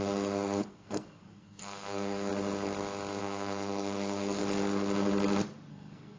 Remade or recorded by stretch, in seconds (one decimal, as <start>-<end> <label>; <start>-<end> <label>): 0.0-2.3 remade; 2.3-3.2 recorded; 3.2-4.4 remade; 4.4-5.7 recorded; 5.7-6.2 remade